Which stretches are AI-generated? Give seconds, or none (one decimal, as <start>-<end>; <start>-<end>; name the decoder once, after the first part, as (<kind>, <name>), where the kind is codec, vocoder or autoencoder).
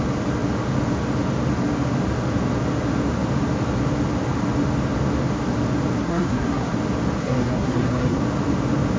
6.0-6.7 (codec, SNAC); 7.2-8.2